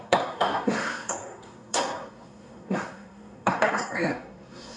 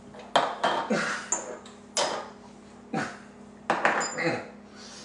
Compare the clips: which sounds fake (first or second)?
first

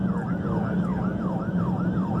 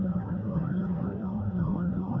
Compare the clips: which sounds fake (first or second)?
second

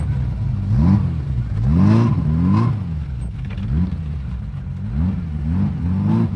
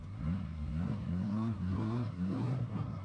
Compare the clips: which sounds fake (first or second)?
second